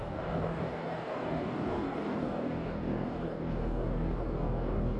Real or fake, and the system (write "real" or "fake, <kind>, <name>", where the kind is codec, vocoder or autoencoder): fake, codec, DAC